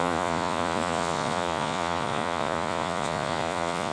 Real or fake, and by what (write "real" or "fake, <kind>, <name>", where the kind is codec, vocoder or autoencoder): fake, vocoder, Vocos